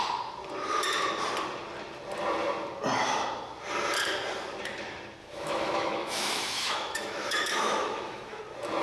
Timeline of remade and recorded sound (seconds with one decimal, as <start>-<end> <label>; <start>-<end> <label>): 0.0-5.2 recorded; 5.2-8.4 remade; 8.4-8.8 recorded